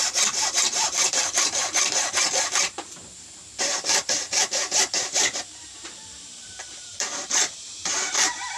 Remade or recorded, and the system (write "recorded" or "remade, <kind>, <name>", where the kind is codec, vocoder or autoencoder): remade, vocoder, BigVGAN v2